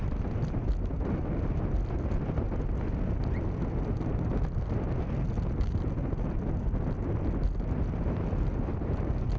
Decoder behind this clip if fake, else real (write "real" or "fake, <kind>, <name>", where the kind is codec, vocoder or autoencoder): real